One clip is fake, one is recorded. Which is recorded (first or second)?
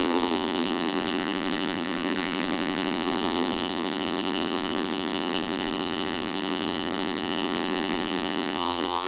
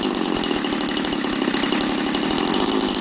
second